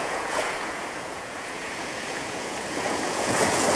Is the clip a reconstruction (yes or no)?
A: yes